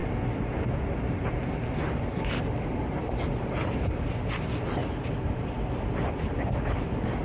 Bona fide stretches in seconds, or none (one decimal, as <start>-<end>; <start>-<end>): 0.0-7.2